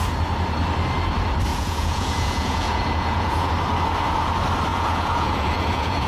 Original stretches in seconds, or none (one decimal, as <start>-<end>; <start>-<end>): 0.0-1.5; 3.5-4.7